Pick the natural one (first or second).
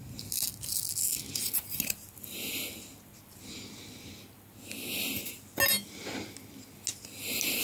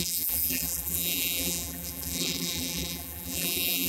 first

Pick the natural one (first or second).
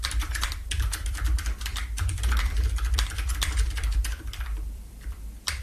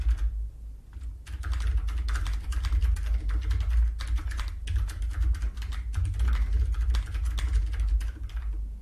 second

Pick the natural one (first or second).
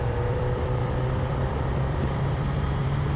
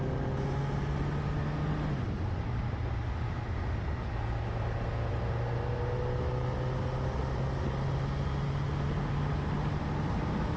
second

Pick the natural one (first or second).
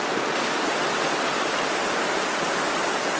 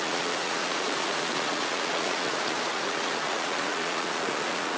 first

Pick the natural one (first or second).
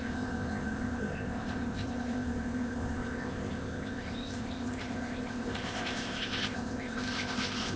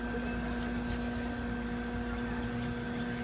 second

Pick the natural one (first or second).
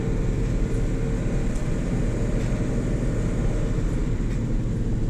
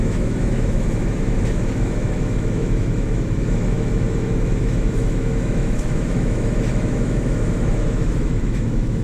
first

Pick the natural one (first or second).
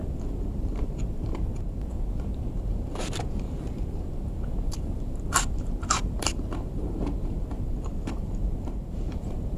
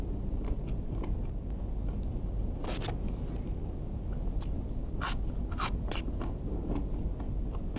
second